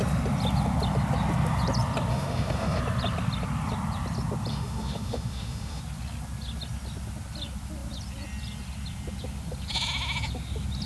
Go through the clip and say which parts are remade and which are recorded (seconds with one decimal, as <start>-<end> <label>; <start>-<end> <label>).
0.0-2.1 recorded; 2.1-2.8 remade; 2.8-4.5 recorded; 4.5-5.8 remade; 5.8-10.9 recorded